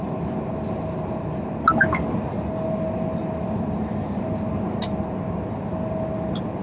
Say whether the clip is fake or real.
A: real